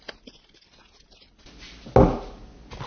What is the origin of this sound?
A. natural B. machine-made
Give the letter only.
A